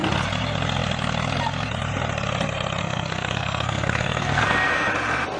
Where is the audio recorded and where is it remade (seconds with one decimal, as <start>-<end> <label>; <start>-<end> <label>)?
0.0-2.8 recorded; 2.8-4.9 remade; 4.9-5.4 recorded